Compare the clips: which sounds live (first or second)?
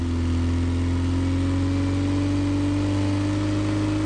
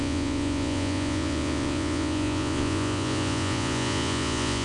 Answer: first